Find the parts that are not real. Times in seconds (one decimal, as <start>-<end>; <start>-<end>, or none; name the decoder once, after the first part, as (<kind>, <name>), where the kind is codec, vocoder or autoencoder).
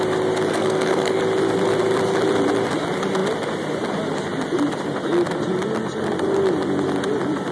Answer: 0.5-1.2 (codec, SNAC)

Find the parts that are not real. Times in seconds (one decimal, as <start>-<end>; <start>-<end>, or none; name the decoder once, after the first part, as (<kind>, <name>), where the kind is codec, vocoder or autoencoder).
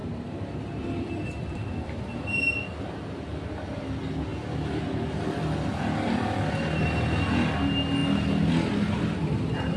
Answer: 0.0-2.7 (vocoder, BigVGAN v2); 4.3-6.5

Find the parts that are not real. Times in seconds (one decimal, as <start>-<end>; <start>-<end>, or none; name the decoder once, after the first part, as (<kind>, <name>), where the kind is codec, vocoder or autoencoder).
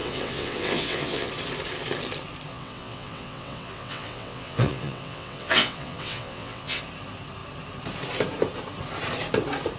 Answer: 0.0-1.3 (vocoder, WaveNeXt); 2.5-6.8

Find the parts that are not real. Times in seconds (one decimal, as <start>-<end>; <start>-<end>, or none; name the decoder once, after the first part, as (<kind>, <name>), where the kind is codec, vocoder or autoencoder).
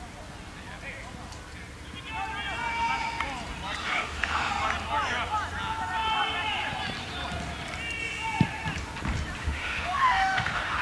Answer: 3.8-4.5 (autoencoder, DAC-VAE); 9.4-10.8